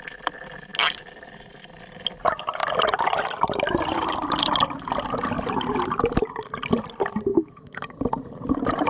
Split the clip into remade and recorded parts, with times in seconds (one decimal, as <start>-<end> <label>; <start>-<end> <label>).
0.0-7.3 recorded; 7.3-8.0 remade; 8.0-8.9 recorded